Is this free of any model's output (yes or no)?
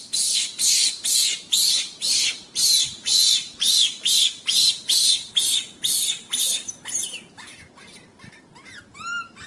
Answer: no